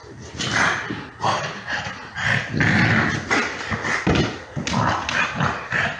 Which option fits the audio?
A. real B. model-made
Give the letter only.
A